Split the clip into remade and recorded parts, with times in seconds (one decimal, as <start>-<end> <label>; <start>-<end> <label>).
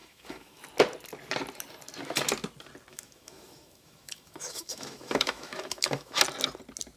0.0-0.6 remade; 0.6-2.9 recorded; 2.9-6.2 remade; 6.2-7.0 recorded